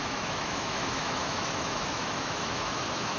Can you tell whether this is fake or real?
fake